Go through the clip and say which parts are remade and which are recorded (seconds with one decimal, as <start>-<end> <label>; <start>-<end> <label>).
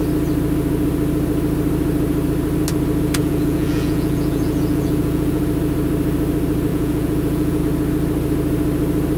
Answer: 0.0-3.2 recorded; 3.2-5.4 remade; 5.4-6.7 recorded; 6.7-7.6 remade; 7.6-9.2 recorded